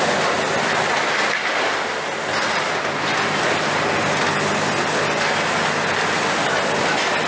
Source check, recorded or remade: recorded